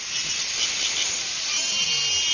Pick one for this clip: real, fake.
real